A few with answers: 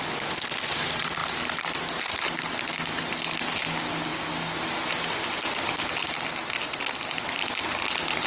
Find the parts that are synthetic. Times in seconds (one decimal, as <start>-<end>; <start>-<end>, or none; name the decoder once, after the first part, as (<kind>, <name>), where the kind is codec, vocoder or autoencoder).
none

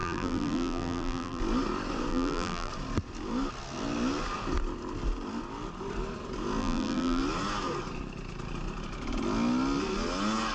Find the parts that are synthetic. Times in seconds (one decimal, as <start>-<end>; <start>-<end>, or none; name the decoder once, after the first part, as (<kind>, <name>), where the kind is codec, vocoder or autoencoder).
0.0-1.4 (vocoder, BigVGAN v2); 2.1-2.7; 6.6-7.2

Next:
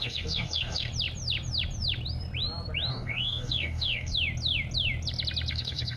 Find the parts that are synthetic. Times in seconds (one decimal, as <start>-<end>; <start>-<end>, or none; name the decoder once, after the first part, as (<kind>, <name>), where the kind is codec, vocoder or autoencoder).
0.0-0.9 (codec, DAC); 2.9-4.1; 5.5-6.0